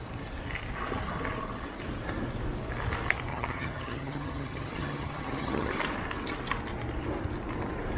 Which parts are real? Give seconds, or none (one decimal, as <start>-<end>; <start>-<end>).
0.0-3.3; 5.7-8.0

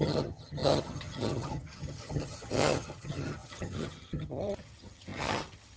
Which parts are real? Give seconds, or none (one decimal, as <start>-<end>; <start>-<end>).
none